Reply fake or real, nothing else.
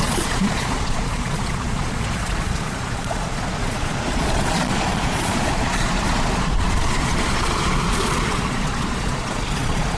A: fake